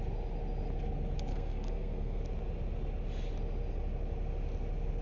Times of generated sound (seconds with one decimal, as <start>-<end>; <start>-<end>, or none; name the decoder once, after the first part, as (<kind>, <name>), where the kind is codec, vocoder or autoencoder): 1.3-2.2 (codec, SNAC)